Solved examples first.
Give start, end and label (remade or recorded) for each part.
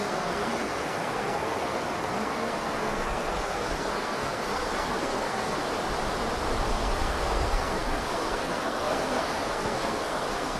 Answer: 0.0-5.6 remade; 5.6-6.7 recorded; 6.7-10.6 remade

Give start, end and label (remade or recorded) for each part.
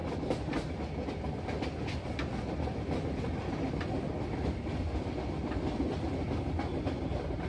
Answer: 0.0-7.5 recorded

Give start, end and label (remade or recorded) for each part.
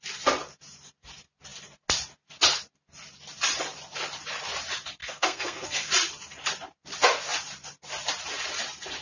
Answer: 0.0-5.0 recorded; 5.0-5.9 remade; 5.9-9.0 recorded